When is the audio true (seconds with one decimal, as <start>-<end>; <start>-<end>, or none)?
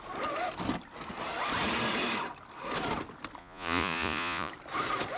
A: 0.0-3.4; 4.5-5.2